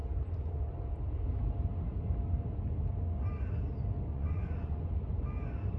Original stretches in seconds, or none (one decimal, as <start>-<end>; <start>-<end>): 0.0-4.1; 4.8-5.8